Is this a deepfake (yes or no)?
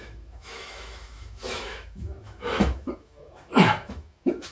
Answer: yes